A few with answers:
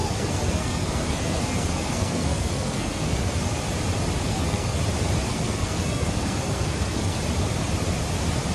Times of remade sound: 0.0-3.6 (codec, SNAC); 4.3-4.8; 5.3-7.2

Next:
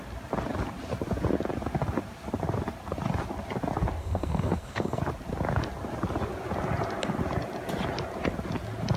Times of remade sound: 4.0-5.0 (codec, SNAC)